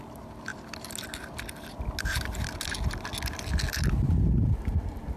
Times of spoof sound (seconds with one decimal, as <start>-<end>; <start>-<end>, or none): none